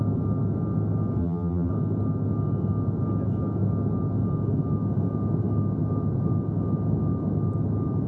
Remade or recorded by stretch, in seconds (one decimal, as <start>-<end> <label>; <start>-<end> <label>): 0.0-1.2 recorded; 1.2-1.7 remade; 1.7-8.1 recorded